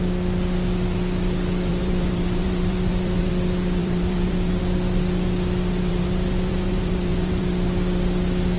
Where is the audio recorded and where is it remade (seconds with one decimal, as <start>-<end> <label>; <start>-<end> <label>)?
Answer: 0.0-1.7 recorded; 1.7-3.3 remade; 3.3-3.8 recorded; 3.8-4.6 remade; 4.6-5.9 recorded; 5.9-7.4 remade; 7.4-8.6 recorded